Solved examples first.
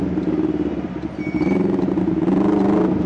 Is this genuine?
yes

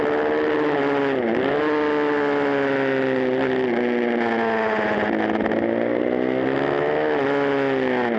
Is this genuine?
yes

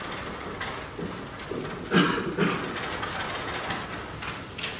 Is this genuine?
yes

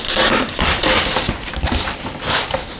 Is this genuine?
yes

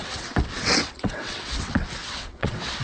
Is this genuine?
no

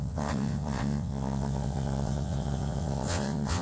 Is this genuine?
no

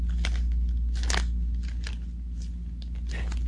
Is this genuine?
yes